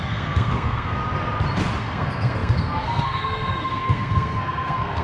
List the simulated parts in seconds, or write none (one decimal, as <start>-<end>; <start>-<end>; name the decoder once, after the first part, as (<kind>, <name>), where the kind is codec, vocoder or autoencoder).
0.0-1.0 (codec, SNAC); 1.8-5.0